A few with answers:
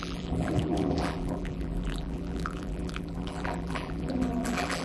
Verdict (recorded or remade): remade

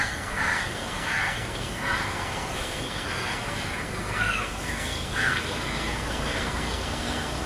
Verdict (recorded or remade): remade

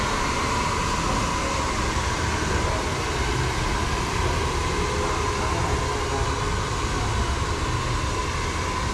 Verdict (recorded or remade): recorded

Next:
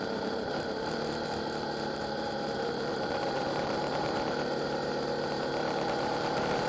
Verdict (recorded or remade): remade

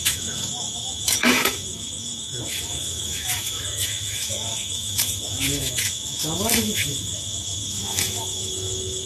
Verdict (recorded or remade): remade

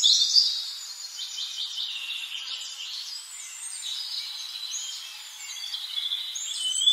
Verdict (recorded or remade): recorded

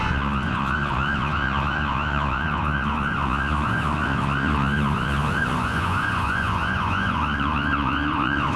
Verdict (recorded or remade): remade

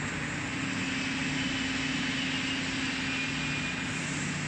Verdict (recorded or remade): recorded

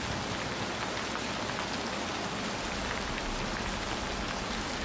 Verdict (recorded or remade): recorded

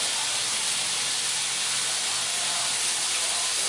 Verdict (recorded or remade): recorded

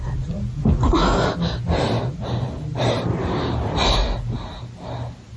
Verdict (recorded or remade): recorded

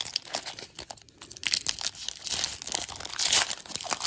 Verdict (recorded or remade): recorded